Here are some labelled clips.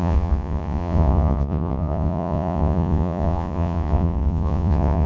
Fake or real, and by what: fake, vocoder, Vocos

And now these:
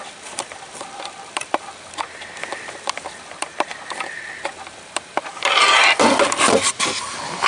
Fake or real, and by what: fake, vocoder, BigVGAN v2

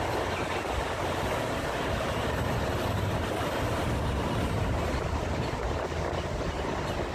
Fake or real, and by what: real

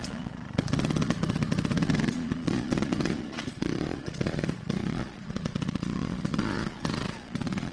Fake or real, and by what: fake, vocoder, Vocos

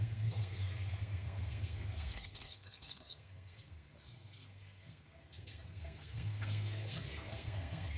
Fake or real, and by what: fake, codec, SNAC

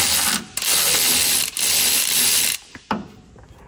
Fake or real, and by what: real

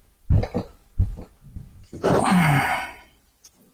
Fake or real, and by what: real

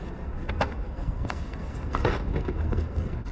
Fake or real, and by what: fake, codec, SNAC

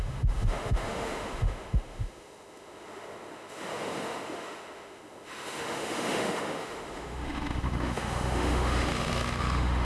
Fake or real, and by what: fake, autoencoder, DAC-VAE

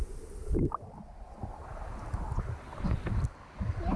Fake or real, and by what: real